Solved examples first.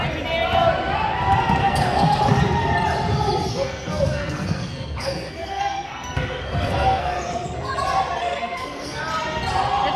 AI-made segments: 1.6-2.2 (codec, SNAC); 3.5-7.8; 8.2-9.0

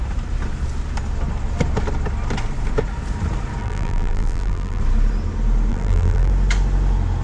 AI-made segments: 3.6-4.8 (vocoder, BigVGAN v2); 5.7-6.3

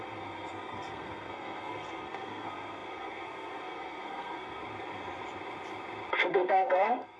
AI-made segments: 0.0-4.6 (codec, SNAC); 6.3-7.2

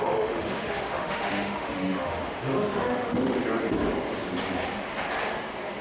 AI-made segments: 0.0-3.4 (autoencoder, DAC-VAE)

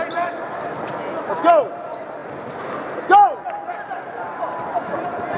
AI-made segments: none